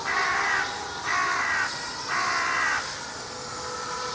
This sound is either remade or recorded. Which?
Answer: recorded